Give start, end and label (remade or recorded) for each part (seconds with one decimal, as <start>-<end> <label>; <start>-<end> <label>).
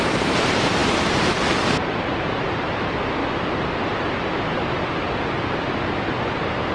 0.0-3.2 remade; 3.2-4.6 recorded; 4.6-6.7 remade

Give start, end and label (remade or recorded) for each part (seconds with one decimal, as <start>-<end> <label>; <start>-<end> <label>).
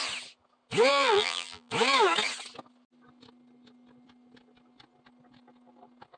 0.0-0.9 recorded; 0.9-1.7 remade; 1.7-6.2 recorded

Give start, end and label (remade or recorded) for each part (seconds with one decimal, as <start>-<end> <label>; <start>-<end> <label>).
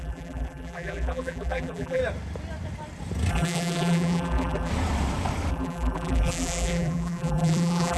0.0-2.0 remade; 2.0-3.3 recorded; 3.3-4.7 remade; 4.7-5.5 recorded; 5.5-8.0 remade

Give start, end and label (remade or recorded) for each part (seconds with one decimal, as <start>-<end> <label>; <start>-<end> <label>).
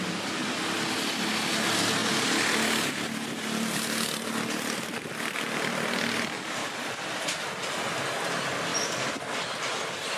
0.0-6.6 recorded; 6.6-7.4 remade; 7.4-8.7 recorded; 8.7-9.6 remade; 9.6-10.2 recorded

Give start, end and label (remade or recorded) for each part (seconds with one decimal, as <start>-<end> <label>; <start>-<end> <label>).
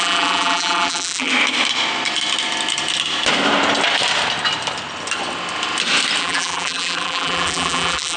0.0-1.3 remade; 1.3-6.2 recorded; 6.2-8.2 remade